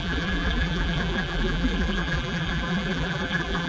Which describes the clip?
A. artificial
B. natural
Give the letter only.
A